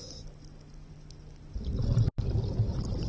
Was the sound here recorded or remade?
recorded